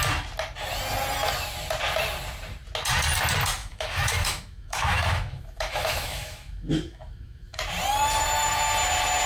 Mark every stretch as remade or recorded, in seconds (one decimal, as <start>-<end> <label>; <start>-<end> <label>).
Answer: 0.0-3.6 recorded; 3.6-7.6 remade; 7.6-9.3 recorded